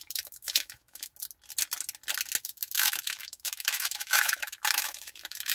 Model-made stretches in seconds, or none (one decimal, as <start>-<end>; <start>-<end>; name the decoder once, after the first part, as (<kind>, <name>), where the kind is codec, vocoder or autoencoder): 0.0-1.1 (autoencoder, DAC-VAE); 2.4-5.5